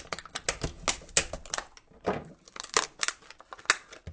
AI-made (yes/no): no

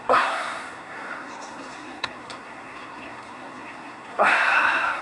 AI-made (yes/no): yes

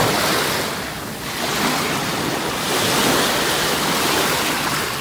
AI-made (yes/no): no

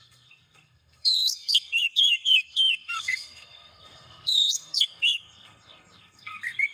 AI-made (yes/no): yes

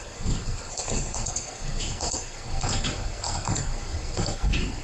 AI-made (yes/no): yes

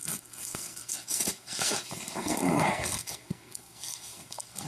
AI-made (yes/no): yes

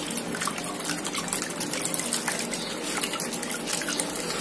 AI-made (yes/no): no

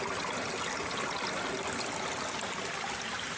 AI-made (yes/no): no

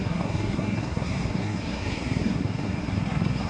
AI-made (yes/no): yes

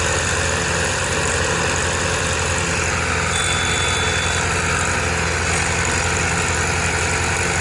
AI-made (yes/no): no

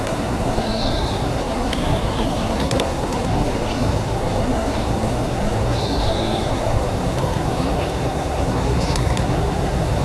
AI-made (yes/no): yes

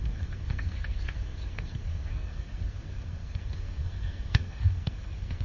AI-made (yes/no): yes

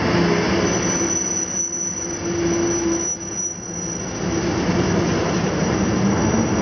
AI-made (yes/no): no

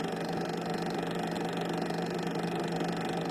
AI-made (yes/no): no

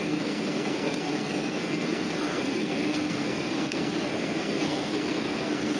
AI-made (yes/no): yes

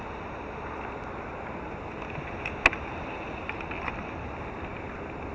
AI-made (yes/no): no